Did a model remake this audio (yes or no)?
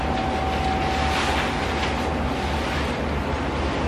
no